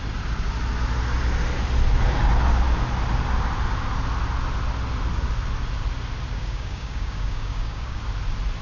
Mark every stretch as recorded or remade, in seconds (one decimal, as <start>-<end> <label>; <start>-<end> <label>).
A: 0.0-6.3 recorded; 6.3-8.0 remade; 8.0-8.6 recorded